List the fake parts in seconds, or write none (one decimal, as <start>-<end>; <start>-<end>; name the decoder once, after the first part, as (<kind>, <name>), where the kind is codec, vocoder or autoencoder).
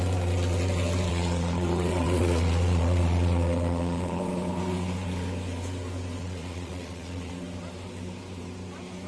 1.1-4.2 (vocoder, Vocos); 6.2-7.3